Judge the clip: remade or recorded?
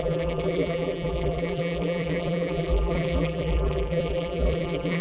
remade